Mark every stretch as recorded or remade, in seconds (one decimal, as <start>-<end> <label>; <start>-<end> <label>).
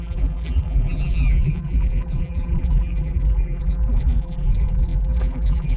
0.0-5.8 remade